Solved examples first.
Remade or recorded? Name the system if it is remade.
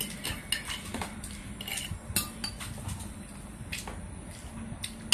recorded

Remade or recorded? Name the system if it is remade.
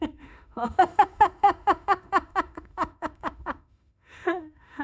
remade, autoencoder, DAC-VAE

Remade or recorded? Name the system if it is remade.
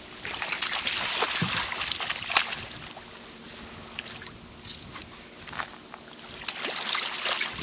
recorded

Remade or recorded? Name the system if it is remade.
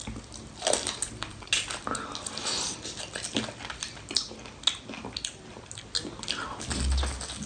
recorded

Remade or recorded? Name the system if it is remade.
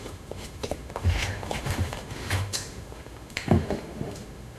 remade, autoencoder, DAC-VAE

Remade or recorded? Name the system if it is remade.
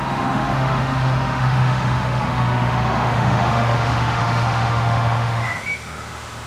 remade, autoencoder, DAC-VAE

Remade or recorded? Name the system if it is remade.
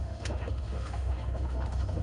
remade, autoencoder, DAC-VAE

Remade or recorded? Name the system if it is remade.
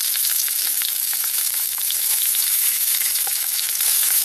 remade, autoencoder, DAC-VAE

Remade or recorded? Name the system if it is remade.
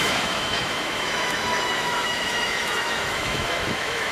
remade, autoencoder, DAC-VAE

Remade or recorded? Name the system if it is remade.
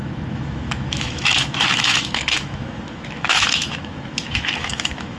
remade, autoencoder, DAC-VAE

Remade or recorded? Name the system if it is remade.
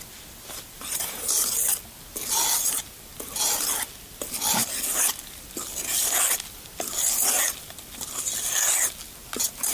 recorded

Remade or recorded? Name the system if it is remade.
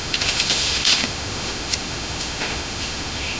remade, autoencoder, DAC-VAE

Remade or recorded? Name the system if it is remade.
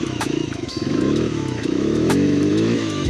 remade, autoencoder, DAC-VAE